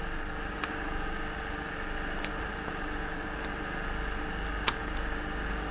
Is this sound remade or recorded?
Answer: recorded